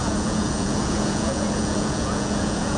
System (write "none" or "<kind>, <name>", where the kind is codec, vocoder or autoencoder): vocoder, Vocos